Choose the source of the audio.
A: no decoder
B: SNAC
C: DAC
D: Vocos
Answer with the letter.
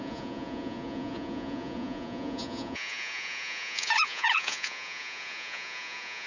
D